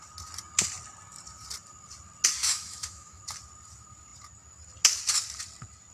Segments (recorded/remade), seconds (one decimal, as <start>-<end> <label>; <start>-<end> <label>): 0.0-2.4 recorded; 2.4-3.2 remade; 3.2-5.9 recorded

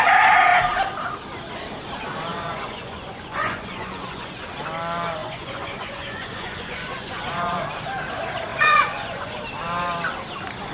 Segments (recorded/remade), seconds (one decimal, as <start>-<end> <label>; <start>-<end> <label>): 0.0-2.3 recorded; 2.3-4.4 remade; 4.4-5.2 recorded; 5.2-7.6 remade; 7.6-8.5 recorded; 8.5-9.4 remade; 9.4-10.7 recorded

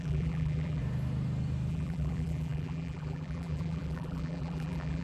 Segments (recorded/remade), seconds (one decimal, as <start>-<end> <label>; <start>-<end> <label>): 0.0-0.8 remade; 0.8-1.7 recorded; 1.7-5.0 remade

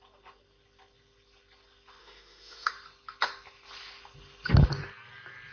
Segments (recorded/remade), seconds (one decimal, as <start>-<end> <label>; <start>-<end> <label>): 0.0-2.0 recorded; 2.0-2.7 remade; 2.7-5.5 recorded

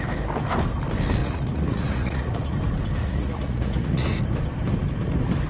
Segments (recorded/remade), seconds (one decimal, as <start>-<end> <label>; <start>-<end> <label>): 0.0-1.2 recorded; 1.2-2.5 remade; 2.5-3.0 recorded; 3.0-4.2 remade; 4.2-5.5 recorded

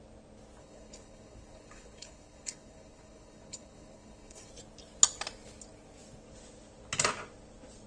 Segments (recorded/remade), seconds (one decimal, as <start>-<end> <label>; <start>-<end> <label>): 0.0-0.6 recorded; 0.6-4.5 remade; 4.5-7.9 recorded

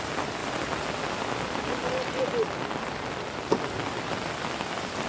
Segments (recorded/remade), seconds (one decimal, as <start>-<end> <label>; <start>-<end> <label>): 0.0-5.1 recorded